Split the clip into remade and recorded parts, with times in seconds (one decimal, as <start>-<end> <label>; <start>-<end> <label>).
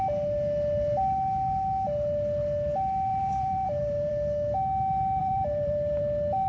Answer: 0.0-3.1 recorded; 3.1-4.1 remade; 4.1-5.2 recorded; 5.2-6.0 remade; 6.0-6.5 recorded